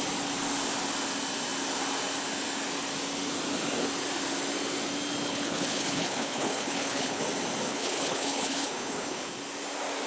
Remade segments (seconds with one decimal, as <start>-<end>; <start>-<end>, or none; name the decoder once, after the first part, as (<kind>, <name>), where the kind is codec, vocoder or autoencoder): 5.3-7.2 (codec, HILCodec); 7.7-9.3